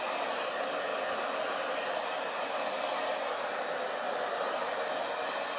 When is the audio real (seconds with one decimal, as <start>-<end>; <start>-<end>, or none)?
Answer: 0.0-5.6